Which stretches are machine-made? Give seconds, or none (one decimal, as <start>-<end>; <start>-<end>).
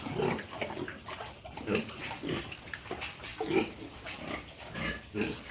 0.0-3.3; 5.1-5.5